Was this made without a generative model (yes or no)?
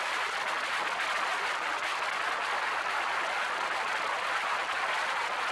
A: yes